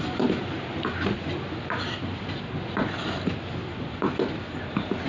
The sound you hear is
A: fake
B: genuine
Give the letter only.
B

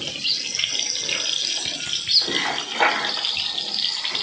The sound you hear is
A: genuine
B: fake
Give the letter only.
A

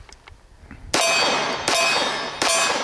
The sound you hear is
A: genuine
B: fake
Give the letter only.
A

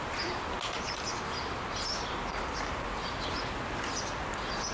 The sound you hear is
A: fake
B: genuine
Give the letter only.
B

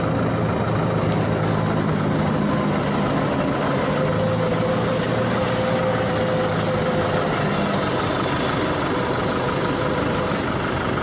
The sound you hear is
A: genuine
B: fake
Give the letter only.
A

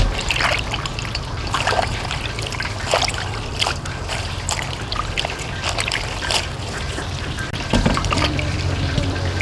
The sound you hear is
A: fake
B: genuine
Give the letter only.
B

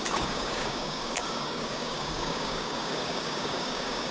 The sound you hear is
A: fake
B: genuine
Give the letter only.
A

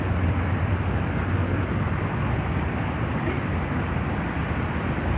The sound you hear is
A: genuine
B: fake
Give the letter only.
A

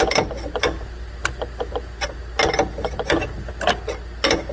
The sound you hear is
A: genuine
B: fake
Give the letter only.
A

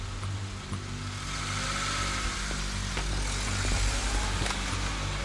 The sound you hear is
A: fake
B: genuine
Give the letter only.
B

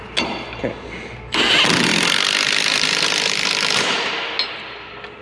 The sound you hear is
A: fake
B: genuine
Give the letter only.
B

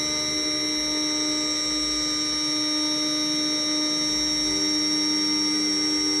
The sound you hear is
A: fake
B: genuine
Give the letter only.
B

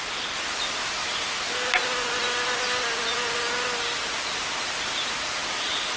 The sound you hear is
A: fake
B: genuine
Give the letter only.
B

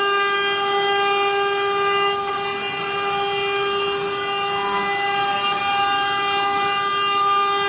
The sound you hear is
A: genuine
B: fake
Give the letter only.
A